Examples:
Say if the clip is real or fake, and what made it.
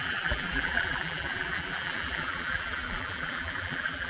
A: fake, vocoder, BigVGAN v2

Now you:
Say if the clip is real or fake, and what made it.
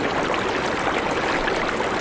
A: real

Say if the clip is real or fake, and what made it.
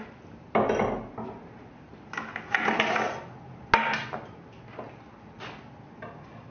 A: real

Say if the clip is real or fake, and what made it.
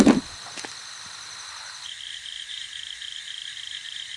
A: real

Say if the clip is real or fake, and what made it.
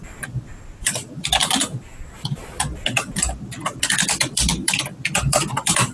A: fake, vocoder, BigVGAN v2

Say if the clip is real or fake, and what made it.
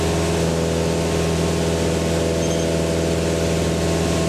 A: real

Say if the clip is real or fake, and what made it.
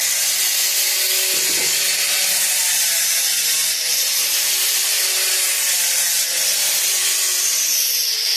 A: real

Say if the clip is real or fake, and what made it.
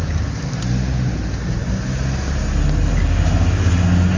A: real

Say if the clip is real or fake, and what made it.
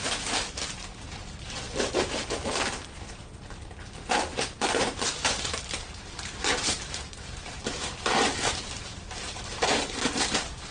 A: fake, vocoder, BigVGAN v2